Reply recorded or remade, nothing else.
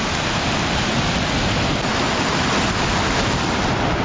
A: recorded